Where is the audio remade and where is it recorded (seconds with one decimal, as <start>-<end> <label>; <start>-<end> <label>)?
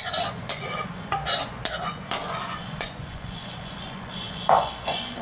0.0-5.2 remade